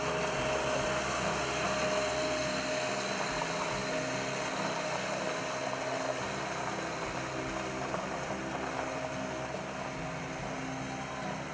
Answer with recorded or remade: recorded